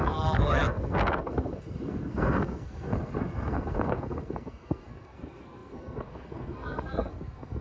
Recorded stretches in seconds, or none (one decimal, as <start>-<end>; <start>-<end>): none